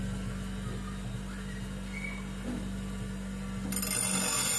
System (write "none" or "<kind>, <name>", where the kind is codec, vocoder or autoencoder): none